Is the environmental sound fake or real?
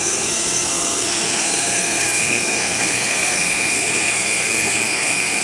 fake